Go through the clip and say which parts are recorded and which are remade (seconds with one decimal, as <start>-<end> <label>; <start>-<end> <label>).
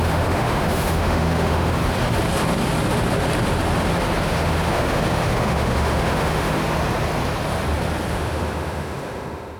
0.0-1.8 remade; 1.8-4.2 recorded; 4.2-6.6 remade; 6.6-8.1 recorded; 8.1-9.6 remade